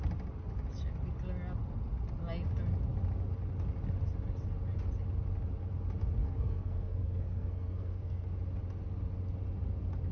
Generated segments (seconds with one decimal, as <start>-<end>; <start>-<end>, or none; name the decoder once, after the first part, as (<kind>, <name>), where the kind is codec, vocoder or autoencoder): 6.2-8.3 (codec, SNAC)